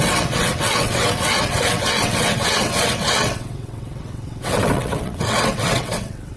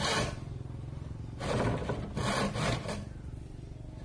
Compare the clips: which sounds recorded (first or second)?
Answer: second